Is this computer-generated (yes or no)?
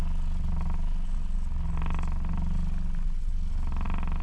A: no